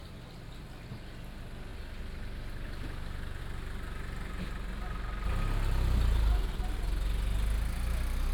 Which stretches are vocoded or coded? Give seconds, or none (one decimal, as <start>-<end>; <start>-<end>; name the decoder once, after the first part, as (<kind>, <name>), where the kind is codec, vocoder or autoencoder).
none